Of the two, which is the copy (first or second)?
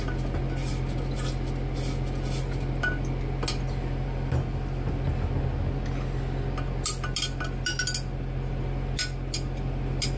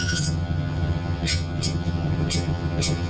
second